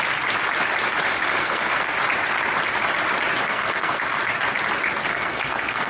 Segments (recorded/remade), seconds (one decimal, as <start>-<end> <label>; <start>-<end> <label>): 0.0-1.4 recorded; 1.4-1.9 remade; 1.9-3.4 recorded; 3.4-4.0 remade; 4.0-5.1 recorded; 5.1-5.9 remade

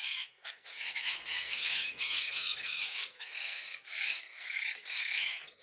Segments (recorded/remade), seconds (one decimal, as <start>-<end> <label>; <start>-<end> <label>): 0.0-5.6 remade